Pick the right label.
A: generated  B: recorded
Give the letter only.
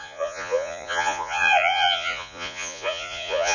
A